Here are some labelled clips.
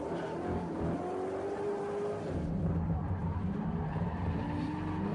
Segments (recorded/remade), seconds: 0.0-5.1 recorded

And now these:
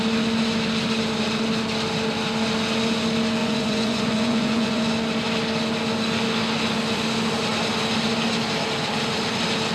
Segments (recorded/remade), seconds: 0.0-3.4 recorded; 3.4-4.8 remade; 4.8-9.7 recorded

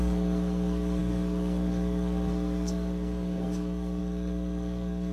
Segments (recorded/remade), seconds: 0.0-5.1 remade

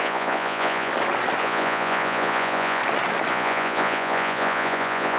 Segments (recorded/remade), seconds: 0.0-0.9 remade; 0.9-1.4 recorded; 1.4-2.8 remade; 2.8-3.3 recorded; 3.3-5.2 remade

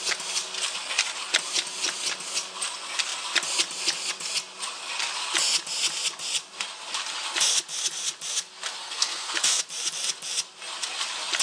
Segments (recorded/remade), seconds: 0.0-8.8 recorded; 8.8-9.6 remade; 9.6-11.4 recorded

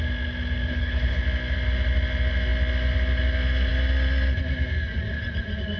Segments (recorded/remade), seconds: 0.0-0.7 recorded; 0.7-1.2 remade; 1.2-5.8 recorded